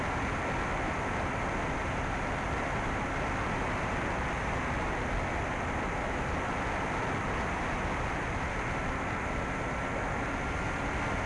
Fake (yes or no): no